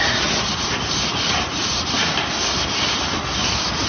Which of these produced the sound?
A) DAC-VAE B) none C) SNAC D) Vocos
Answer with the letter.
B